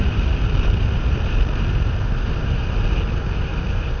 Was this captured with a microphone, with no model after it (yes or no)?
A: yes